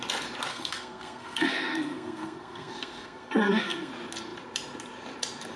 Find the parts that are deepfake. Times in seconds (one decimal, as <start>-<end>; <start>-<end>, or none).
0.5-3.9